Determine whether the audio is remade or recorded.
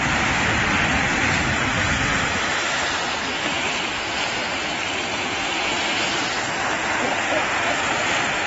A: recorded